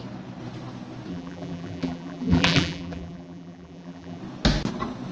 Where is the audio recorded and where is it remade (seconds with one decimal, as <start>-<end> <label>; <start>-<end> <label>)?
0.0-1.1 recorded; 1.1-4.2 remade; 4.2-5.1 recorded